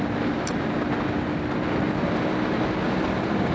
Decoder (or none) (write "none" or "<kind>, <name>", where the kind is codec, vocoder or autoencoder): none